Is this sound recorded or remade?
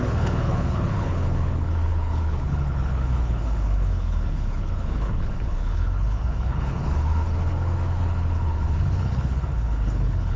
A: remade